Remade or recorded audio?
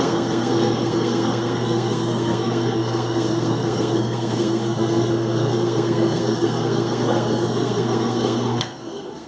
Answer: remade